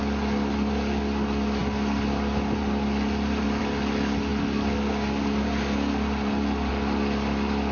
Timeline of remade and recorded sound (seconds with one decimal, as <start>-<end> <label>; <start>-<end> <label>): 0.0-7.7 recorded